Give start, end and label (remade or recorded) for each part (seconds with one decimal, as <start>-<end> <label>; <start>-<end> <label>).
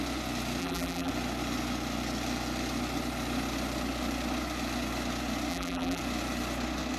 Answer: 0.0-0.6 recorded; 0.6-1.1 remade; 1.1-5.5 recorded; 5.5-6.0 remade; 6.0-7.0 recorded